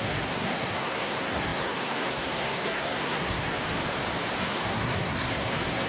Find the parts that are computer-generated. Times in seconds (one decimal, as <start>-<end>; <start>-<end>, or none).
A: 0.0-3.6; 4.4-5.9